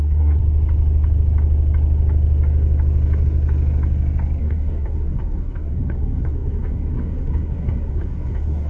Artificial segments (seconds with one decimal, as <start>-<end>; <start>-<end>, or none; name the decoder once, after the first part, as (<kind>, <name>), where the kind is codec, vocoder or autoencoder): 0.0-0.4 (codec, SNAC); 4.4-8.7